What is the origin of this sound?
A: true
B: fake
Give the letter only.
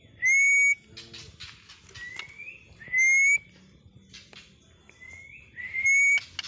A